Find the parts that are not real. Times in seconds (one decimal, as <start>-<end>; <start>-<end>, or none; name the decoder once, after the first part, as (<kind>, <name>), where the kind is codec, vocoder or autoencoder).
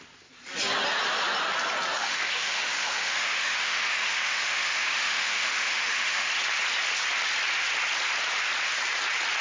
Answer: 2.0-6.3 (autoencoder, DAC-VAE)